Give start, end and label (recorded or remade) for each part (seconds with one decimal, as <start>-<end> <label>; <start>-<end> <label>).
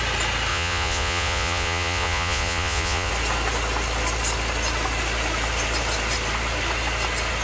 0.0-0.5 recorded; 0.5-3.1 remade; 3.1-7.4 recorded